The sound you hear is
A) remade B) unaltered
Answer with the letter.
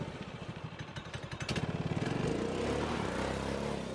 B